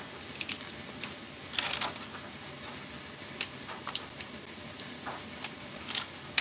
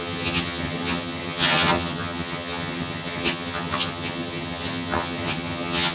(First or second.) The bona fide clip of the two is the first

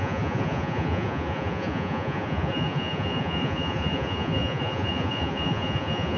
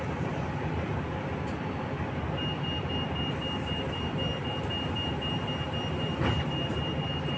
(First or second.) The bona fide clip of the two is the second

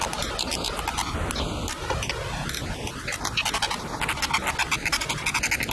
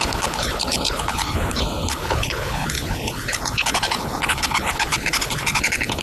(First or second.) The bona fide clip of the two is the first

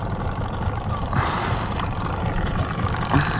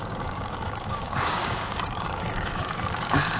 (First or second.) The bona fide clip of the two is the first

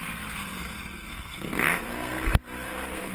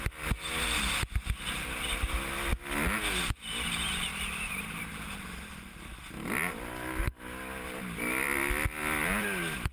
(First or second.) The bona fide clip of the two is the second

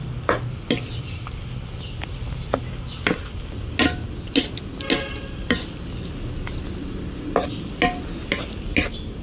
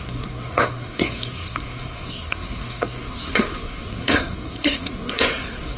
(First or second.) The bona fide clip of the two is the first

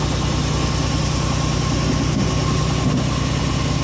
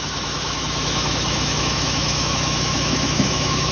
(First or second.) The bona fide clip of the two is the first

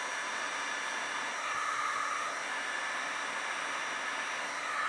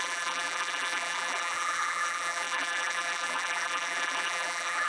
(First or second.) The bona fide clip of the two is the first